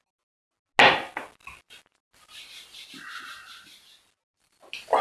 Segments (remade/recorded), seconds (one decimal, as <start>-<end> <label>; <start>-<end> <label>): 0.0-5.0 recorded